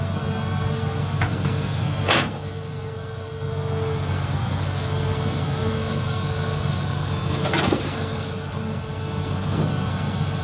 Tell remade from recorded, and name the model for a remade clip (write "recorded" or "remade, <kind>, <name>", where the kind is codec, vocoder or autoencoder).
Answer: remade, codec, SNAC